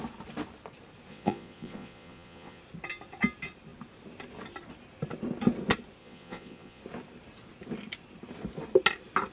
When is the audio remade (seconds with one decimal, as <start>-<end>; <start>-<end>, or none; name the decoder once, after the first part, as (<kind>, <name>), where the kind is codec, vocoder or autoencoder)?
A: 1.1-2.6 (vocoder, Vocos); 6.0-6.8